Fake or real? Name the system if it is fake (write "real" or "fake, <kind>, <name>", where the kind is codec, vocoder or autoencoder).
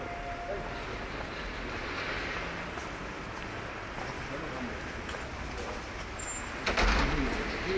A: real